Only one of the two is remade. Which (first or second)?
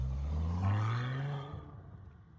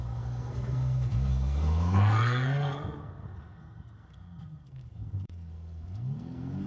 second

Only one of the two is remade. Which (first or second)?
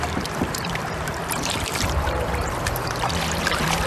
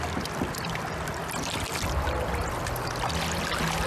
first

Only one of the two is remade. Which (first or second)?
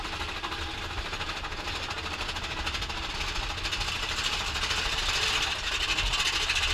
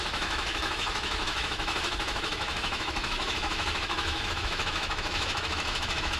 second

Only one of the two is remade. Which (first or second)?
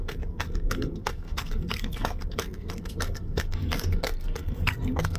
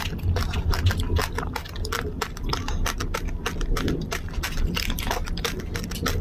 first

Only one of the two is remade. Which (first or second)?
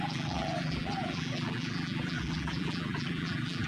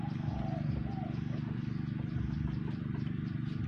first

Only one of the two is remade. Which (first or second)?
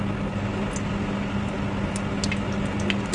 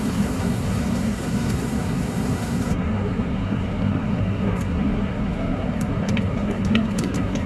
second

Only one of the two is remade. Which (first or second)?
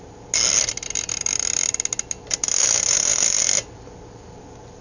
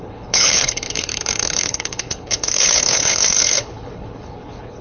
second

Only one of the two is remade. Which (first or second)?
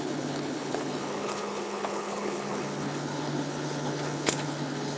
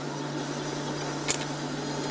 first